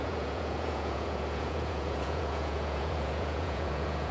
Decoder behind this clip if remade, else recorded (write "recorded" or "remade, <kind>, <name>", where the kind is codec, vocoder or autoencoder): remade, vocoder, Vocos